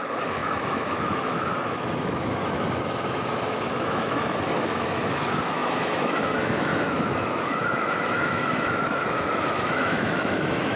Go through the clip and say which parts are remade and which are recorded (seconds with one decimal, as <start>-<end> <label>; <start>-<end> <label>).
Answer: 0.0-10.8 remade